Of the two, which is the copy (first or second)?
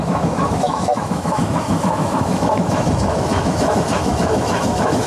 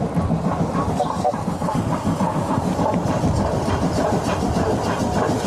first